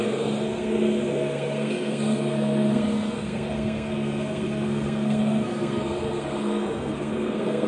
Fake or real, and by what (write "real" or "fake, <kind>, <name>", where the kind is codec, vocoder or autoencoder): fake, codec, SNAC